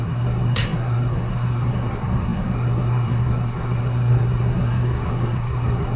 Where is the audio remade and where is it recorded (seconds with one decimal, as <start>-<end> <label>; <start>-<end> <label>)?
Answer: 0.0-6.0 remade